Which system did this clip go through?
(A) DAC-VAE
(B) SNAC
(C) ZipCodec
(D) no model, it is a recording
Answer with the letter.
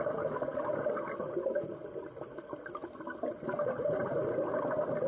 D